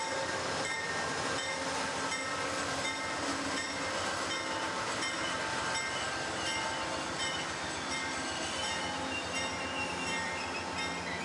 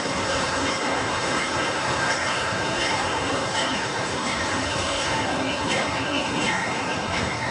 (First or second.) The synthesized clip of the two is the second